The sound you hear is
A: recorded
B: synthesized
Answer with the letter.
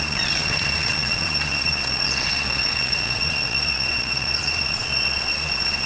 B